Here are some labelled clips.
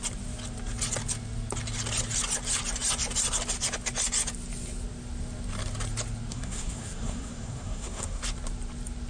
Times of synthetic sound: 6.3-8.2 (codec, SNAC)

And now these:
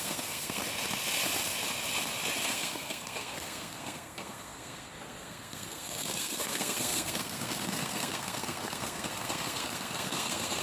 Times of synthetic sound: 0.0-0.6 (codec, SNAC); 2.4-10.6